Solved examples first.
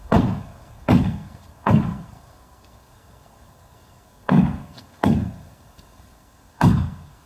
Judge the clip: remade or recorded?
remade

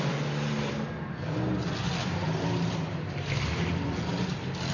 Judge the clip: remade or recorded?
recorded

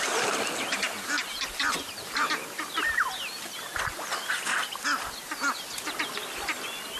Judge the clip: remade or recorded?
recorded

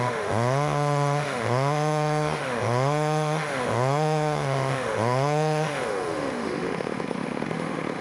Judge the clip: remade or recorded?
remade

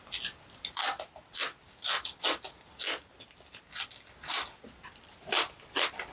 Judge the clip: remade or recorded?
recorded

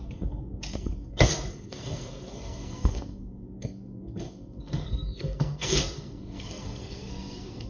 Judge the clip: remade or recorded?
remade